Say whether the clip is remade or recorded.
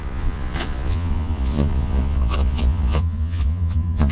remade